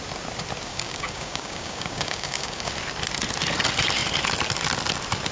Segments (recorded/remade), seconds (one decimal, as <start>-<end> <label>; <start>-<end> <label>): 0.0-0.7 recorded; 0.7-2.7 remade; 2.7-5.3 recorded